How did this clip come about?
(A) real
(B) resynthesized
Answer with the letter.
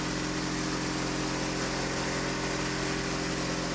A